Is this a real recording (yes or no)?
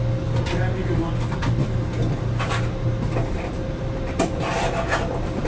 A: yes